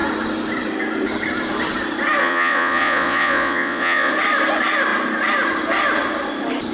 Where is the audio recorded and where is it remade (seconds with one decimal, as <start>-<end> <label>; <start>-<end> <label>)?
0.0-2.2 recorded; 2.2-4.1 remade; 4.1-6.7 recorded